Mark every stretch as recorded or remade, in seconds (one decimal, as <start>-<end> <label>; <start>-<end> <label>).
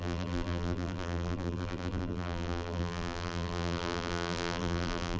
0.0-5.2 remade